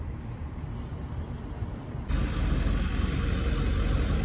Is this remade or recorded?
recorded